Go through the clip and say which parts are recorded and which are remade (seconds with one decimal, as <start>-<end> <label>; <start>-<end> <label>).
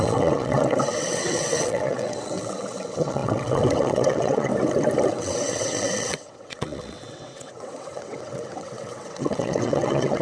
0.0-4.5 remade; 4.5-5.1 recorded; 5.1-10.2 remade